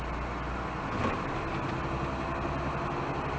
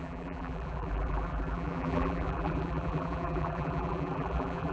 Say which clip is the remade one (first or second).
second